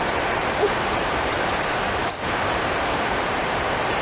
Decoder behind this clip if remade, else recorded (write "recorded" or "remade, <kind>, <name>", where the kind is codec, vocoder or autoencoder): remade, vocoder, BigVGAN v2